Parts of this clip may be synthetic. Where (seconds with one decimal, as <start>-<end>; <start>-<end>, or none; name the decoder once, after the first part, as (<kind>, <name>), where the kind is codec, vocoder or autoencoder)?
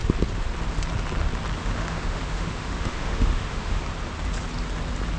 1.6-3.8 (autoencoder, DAC-VAE)